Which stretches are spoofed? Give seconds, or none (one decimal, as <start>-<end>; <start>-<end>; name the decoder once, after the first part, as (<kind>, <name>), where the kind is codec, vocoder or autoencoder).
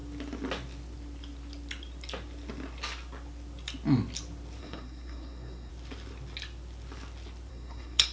4.6-5.7 (codec, SNAC); 7.5-8.1